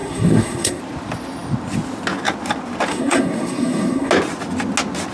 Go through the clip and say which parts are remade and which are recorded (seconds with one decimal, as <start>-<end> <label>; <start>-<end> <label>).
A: 0.0-0.8 remade; 0.8-2.9 recorded; 2.9-4.1 remade; 4.1-5.1 recorded